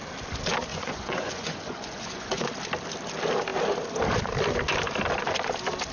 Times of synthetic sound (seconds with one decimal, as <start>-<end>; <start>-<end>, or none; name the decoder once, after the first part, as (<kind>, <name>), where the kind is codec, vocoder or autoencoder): 0.7-2.4 (vocoder, Vocos)